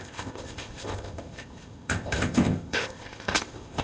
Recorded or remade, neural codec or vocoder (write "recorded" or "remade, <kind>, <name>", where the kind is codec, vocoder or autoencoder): remade, codec, ZipCodec